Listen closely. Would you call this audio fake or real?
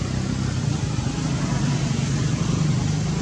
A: real